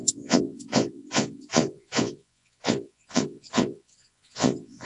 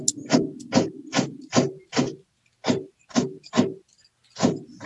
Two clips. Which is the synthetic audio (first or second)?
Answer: first